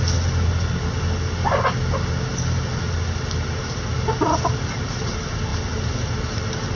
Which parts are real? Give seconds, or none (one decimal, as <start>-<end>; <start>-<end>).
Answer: 0.0-6.8